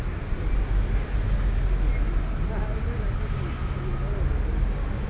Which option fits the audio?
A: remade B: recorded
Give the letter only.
B